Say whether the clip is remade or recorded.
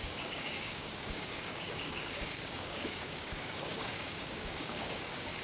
remade